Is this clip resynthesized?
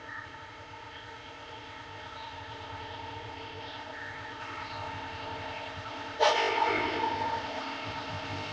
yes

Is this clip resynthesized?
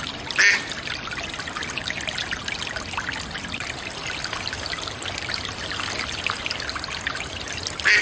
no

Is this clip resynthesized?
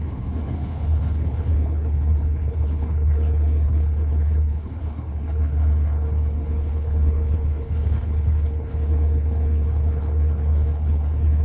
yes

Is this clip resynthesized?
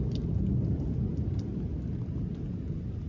no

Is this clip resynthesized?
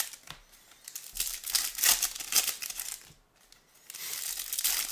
no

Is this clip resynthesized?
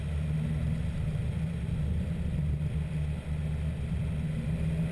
no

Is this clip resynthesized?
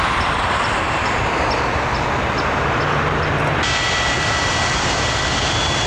no